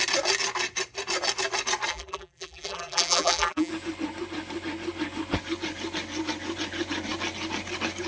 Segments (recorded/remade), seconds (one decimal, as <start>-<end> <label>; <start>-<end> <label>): 0.0-1.9 recorded; 1.9-3.7 remade; 3.7-8.1 recorded